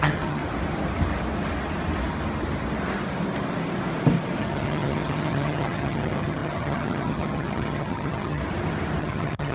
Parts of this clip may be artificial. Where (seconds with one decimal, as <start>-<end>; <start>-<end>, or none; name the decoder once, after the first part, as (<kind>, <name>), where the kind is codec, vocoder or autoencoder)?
0.0-0.4 (vocoder, HiFi-GAN); 4.4-8.4; 9.0-9.5

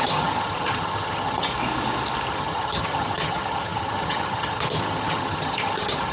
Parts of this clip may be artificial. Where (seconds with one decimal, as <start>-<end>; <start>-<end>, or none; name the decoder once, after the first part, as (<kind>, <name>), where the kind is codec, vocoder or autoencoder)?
0.0-1.5 (vocoder, HiFi-GAN); 2.3-6.1

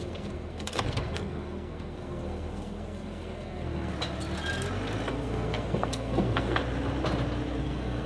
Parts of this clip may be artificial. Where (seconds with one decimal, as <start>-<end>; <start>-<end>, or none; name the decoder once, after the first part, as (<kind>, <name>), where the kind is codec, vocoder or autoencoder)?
0.0-3.9 (codec, SNAC); 5.1-6.6; 7.6-8.1

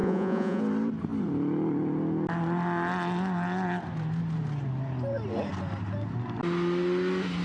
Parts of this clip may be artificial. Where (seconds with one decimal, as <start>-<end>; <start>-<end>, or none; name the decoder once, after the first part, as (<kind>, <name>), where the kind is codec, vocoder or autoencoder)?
0.0-0.6 (vocoder, Vocos)